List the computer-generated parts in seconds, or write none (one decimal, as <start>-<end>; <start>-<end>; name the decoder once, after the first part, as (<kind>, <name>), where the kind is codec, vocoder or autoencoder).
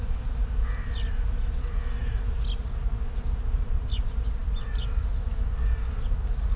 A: none